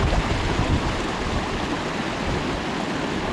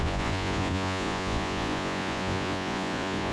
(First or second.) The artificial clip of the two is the second